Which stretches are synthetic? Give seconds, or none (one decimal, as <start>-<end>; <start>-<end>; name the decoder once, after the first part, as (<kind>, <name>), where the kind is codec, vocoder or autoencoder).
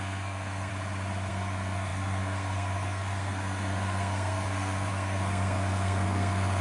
0.0-0.7 (codec, SNAC); 1.3-6.6